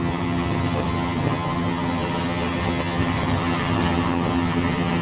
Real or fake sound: fake